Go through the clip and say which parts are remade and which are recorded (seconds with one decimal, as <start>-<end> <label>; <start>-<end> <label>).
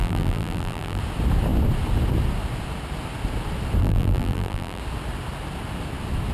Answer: 0.0-1.0 remade; 1.0-3.8 recorded; 3.8-4.8 remade; 4.8-6.3 recorded